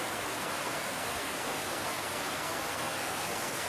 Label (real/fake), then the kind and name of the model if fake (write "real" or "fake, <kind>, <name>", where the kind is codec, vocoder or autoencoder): fake, codec, SNAC